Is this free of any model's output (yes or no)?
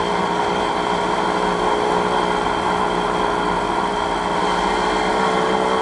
yes